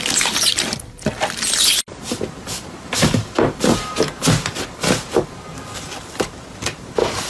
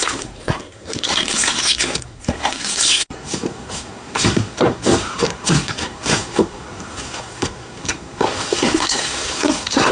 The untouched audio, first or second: first